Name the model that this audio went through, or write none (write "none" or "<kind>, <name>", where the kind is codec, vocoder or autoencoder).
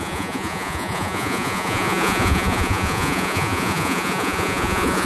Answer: vocoder, Vocos